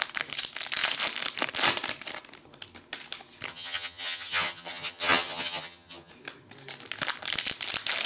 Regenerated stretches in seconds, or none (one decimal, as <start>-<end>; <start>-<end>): 3.5-6.1